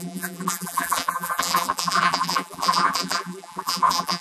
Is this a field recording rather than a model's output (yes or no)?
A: no